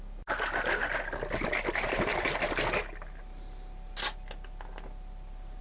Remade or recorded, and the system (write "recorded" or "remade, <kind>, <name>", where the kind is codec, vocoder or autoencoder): recorded